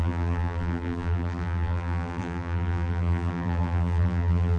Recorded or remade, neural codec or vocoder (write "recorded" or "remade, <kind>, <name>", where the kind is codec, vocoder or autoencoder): remade, vocoder, BigVGAN v2